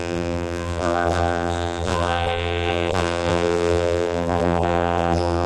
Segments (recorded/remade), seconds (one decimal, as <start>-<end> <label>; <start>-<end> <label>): 0.0-5.5 remade